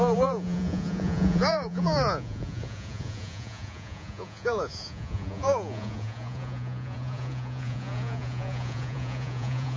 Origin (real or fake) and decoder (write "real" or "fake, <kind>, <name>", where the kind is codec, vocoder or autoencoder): fake, vocoder, Vocos